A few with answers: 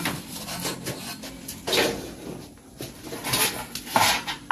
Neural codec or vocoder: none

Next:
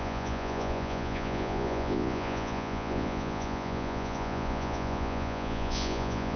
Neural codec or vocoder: vocoder, Vocos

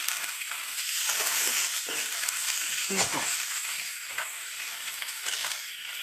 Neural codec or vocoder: codec, DAC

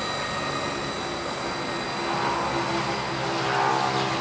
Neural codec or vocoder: none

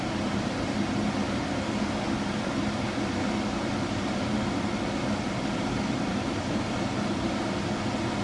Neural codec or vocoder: none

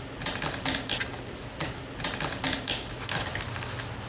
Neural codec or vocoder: none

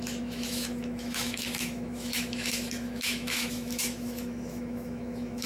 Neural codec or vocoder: autoencoder, DAC-VAE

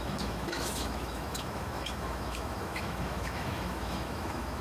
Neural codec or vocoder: autoencoder, DAC-VAE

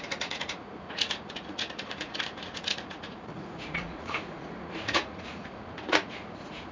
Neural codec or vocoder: vocoder, Vocos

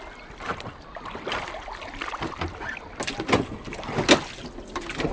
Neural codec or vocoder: none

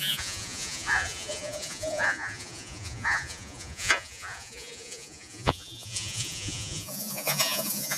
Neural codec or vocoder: vocoder, Vocos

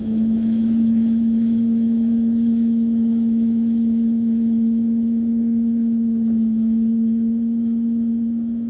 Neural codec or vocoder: autoencoder, DAC-VAE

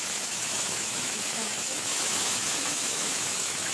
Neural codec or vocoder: autoencoder, DAC-VAE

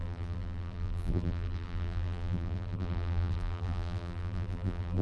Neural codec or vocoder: vocoder, BigVGAN v2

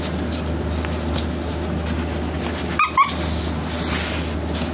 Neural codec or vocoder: none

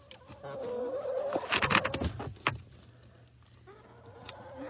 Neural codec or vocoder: none